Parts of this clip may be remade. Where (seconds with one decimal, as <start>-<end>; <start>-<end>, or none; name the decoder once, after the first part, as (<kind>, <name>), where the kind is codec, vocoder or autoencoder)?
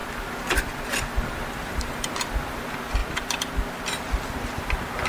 none